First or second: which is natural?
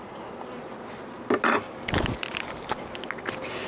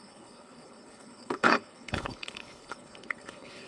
first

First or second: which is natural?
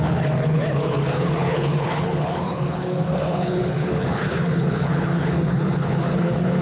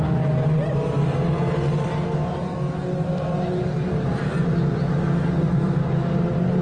second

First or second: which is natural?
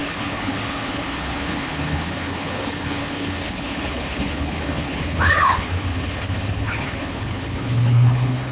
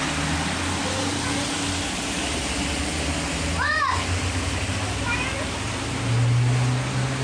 second